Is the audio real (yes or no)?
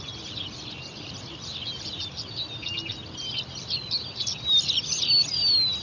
yes